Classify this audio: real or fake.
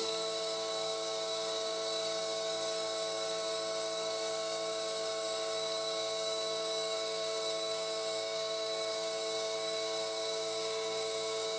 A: fake